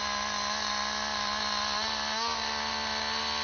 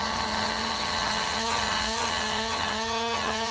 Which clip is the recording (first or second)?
first